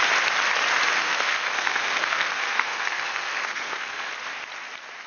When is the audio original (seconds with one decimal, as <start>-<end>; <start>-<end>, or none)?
0.0-1.0; 4.1-5.1